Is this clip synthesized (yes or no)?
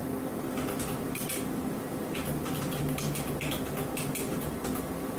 no